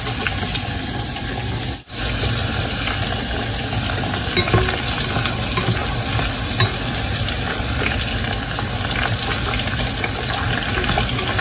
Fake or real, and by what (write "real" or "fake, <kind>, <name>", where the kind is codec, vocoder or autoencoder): real